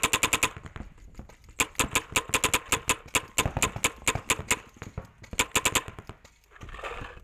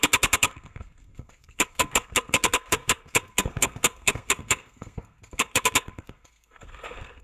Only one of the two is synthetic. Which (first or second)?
second